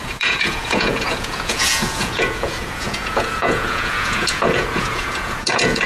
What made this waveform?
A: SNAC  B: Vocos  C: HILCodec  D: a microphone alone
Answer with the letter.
B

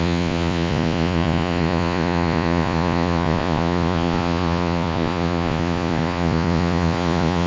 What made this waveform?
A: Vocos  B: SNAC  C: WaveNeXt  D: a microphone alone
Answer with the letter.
A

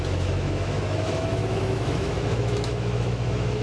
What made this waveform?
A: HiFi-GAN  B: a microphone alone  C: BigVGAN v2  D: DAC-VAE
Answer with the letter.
D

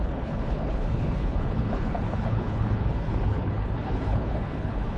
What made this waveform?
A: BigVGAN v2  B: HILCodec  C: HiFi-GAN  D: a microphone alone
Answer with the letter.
B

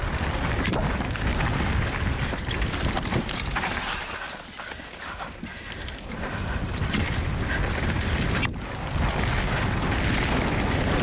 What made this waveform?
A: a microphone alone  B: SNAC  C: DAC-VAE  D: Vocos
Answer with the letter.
A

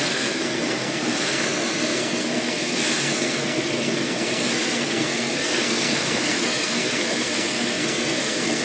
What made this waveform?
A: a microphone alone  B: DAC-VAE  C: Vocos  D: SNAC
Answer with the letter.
D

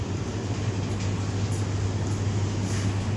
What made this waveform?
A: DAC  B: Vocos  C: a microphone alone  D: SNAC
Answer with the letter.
C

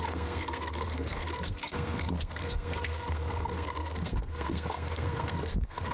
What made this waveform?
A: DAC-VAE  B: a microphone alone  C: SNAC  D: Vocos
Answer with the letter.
C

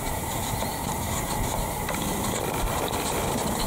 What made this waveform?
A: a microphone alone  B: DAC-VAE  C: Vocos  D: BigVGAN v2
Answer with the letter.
D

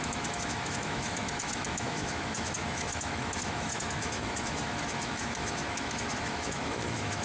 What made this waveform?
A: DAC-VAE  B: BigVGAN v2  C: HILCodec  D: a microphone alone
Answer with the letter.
A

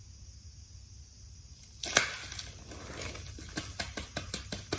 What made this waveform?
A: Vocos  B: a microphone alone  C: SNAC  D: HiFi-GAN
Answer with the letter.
B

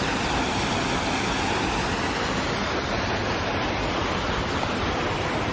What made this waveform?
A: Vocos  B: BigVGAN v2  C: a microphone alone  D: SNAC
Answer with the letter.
C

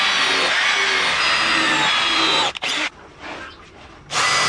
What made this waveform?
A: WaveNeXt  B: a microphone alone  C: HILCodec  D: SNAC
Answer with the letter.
B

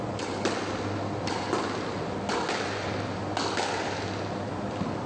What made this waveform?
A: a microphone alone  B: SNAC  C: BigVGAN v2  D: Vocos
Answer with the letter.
A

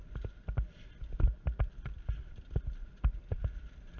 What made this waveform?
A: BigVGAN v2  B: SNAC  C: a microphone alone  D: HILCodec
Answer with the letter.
C